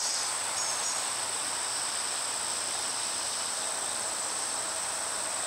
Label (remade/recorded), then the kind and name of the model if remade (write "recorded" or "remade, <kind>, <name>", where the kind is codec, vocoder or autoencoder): recorded